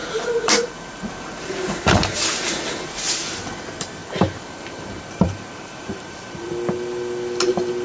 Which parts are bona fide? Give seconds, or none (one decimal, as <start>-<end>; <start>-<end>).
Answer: 2.9-4.0; 6.5-7.8